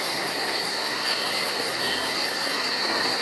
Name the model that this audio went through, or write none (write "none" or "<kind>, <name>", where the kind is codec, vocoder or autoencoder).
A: codec, SNAC